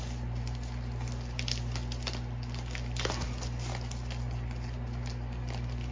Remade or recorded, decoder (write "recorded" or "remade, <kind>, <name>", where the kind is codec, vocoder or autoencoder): recorded